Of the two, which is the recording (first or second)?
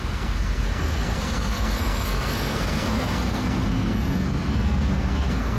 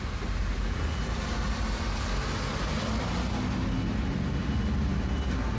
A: second